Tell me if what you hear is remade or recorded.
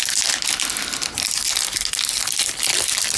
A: recorded